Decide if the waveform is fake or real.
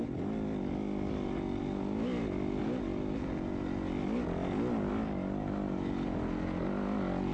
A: real